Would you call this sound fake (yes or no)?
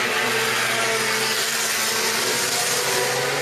no